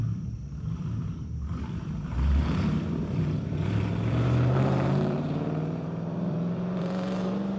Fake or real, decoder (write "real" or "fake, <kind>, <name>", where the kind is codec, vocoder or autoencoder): fake, vocoder, BigVGAN v2